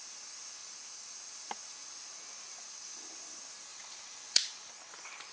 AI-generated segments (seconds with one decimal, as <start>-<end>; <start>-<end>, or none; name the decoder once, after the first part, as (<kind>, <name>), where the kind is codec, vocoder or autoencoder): 0.6-1.3 (vocoder, Vocos); 1.8-3.0; 3.7-4.7